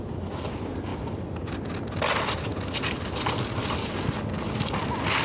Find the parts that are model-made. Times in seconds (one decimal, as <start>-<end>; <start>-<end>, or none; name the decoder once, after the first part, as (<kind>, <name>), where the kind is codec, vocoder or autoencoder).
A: none